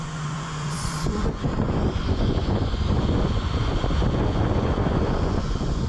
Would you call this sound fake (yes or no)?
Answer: yes